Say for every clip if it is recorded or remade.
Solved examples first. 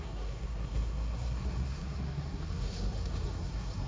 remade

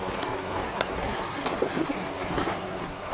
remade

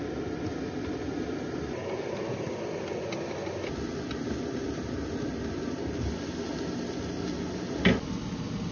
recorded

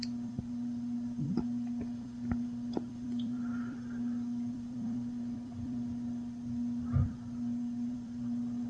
remade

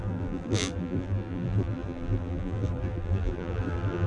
remade